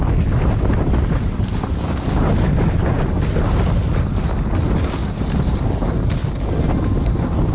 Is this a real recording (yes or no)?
yes